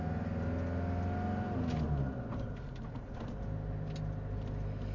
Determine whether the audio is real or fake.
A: real